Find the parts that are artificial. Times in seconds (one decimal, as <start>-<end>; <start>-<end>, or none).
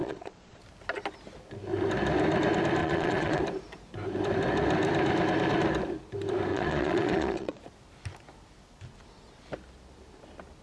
0.0-0.6; 2.8-3.4; 6.5-7.6